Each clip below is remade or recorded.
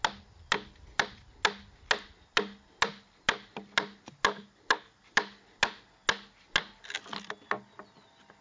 recorded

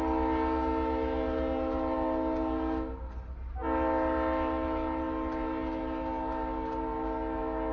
recorded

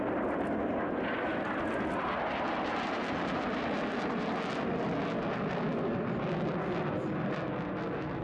recorded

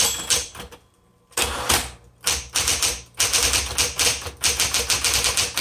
recorded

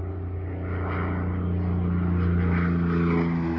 recorded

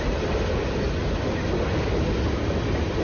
recorded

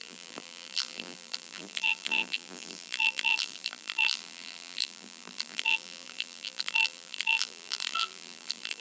remade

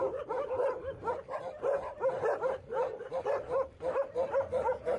remade